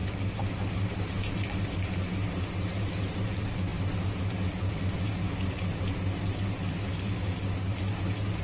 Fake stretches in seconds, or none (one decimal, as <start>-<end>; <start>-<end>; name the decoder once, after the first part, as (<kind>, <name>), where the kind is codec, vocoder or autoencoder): 0.0-8.4 (vocoder, BigVGAN v2)